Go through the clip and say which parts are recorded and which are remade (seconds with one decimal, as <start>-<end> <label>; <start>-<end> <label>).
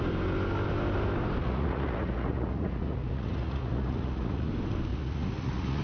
0.0-1.4 recorded; 1.4-4.5 remade; 4.5-4.9 recorded; 4.9-5.8 remade